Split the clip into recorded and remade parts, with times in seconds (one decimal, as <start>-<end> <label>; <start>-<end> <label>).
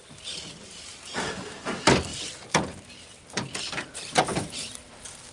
0.0-2.1 remade; 2.1-3.7 recorded; 3.7-5.3 remade